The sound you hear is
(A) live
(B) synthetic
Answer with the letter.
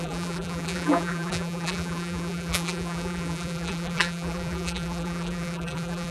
B